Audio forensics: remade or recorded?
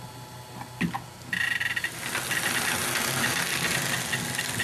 recorded